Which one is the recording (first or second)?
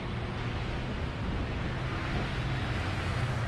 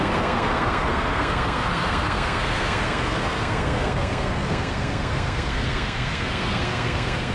first